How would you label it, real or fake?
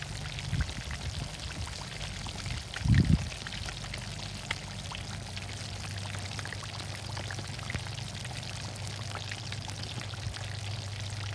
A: real